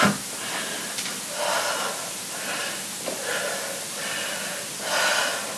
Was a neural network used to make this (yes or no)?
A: no